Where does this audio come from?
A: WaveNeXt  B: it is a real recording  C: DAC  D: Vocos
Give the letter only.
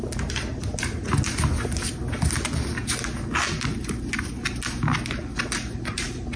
B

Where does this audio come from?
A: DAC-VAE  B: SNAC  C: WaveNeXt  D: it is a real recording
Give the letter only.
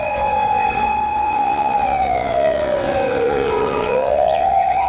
C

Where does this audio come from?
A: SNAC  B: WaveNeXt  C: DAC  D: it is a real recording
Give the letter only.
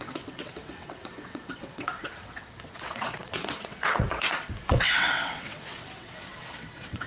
B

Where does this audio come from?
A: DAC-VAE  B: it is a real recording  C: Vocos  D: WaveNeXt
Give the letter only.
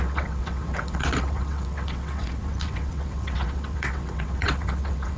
D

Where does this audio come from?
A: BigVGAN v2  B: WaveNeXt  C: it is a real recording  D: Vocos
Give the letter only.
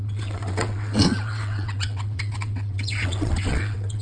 B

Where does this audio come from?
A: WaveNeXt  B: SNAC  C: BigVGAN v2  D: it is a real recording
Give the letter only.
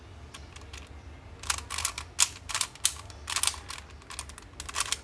D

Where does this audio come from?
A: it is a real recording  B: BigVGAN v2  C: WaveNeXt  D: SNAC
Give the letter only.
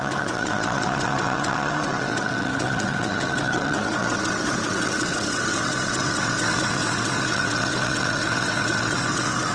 C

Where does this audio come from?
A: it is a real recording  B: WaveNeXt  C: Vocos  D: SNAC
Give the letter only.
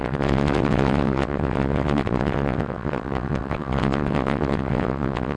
B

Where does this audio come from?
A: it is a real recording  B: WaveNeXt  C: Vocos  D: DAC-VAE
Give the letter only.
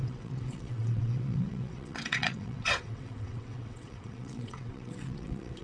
B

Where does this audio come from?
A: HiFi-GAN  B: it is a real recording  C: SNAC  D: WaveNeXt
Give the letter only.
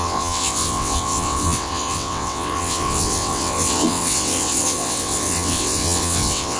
D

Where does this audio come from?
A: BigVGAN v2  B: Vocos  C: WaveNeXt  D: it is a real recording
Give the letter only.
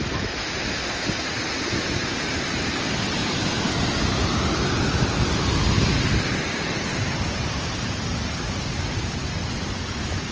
D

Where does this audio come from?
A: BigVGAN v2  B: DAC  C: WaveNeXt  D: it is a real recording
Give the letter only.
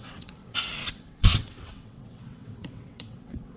C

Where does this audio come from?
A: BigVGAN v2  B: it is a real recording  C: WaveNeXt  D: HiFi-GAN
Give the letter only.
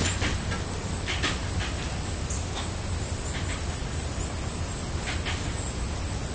B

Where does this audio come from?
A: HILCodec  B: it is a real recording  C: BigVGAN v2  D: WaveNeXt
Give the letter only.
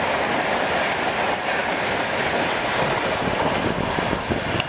B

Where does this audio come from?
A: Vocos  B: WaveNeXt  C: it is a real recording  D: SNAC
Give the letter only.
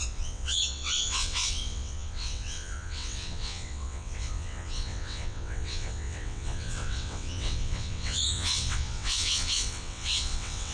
B